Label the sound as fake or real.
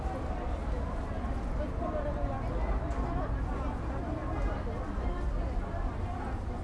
real